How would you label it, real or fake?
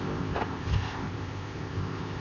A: fake